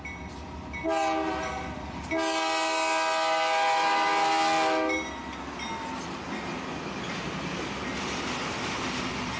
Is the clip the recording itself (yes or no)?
yes